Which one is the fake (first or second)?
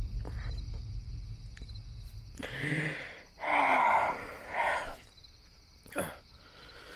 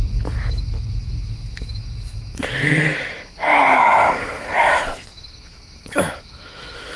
second